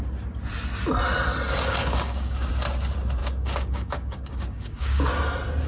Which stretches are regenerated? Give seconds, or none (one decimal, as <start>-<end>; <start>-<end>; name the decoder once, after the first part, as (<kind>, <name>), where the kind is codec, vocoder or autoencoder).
1.8-2.5 (codec, DAC); 3.2-5.1